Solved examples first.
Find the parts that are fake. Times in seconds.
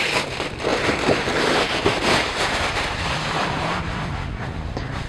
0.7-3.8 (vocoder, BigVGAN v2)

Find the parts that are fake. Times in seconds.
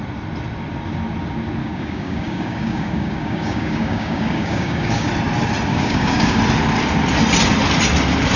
1.6-5.1 (codec, DAC); 5.7-6.4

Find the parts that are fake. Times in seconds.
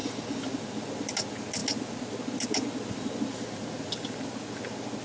none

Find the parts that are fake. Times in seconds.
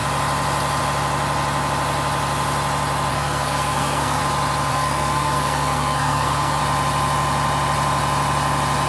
3.1-4.2 (codec, SNAC); 4.7-6.6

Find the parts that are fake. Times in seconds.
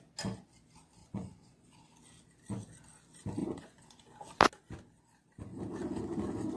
1.0-1.8 (vocoder, Vocos); 3.4-4.0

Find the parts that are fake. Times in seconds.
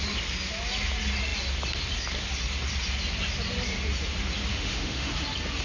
4.5-5.1 (autoencoder, DAC-VAE)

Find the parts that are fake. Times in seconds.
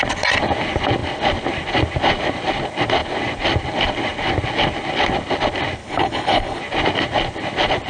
5.8-6.6 (codec, HILCodec)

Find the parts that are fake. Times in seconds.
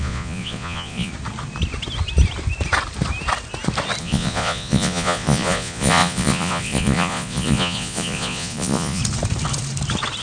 0.0-1.1 (vocoder, Vocos); 4.0-9.0